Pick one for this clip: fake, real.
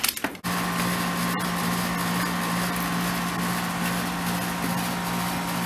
real